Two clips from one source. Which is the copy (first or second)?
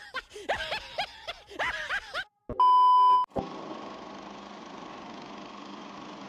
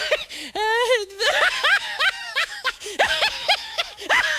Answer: second